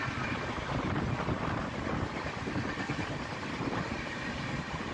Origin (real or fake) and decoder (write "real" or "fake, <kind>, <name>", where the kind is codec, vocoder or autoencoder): fake, vocoder, BigVGAN v2